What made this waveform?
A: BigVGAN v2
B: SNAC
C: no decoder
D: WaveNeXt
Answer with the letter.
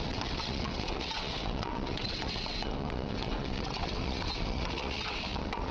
D